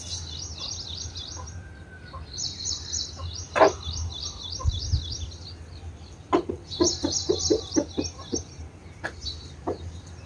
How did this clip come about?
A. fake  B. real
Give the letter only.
B